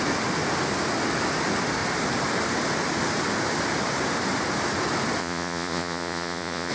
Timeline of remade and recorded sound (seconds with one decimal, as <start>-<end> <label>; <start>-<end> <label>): 0.0-5.2 recorded; 5.2-6.7 remade